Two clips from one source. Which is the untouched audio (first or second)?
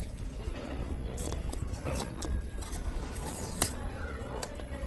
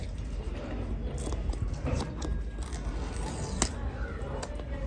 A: second